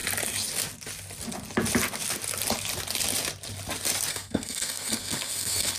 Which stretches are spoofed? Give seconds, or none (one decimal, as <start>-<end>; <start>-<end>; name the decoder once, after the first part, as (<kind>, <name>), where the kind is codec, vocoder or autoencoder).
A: 4.1-5.8 (codec, SNAC)